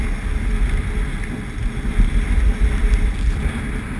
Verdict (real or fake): real